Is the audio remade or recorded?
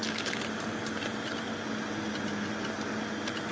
recorded